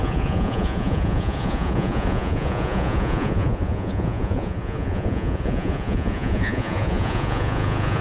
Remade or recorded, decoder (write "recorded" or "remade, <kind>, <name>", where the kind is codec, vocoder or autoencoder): remade, vocoder, Vocos